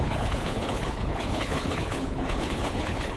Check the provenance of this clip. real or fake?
fake